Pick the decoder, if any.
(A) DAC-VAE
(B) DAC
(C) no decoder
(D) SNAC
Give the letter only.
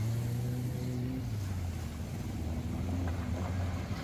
C